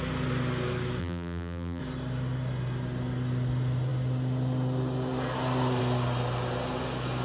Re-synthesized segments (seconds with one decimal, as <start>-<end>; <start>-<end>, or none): 1.0-1.8